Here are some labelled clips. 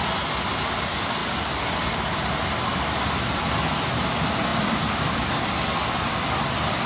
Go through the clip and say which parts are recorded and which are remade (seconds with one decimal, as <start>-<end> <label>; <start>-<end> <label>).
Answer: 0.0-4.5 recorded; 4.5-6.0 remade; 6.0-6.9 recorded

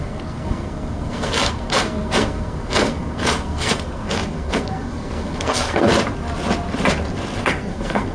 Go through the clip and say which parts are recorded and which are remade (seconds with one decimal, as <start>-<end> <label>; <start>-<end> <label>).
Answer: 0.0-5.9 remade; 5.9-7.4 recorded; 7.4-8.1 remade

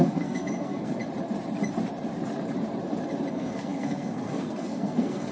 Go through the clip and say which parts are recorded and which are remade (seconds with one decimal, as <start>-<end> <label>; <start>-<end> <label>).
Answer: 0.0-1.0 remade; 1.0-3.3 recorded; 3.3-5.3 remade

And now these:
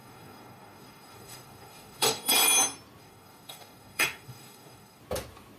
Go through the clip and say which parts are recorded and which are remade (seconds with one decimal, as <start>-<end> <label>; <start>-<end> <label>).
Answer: 0.0-2.3 remade; 2.3-3.0 recorded; 3.0-5.0 remade; 5.0-5.6 recorded